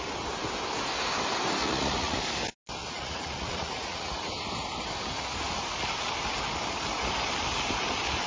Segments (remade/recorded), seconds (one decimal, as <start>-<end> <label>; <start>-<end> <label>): 0.0-1.6 recorded; 1.6-2.2 remade; 2.2-2.8 recorded; 2.8-4.3 remade; 4.3-8.3 recorded

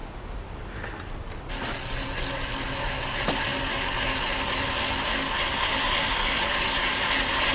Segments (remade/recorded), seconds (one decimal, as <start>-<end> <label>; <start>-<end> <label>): 0.0-7.5 recorded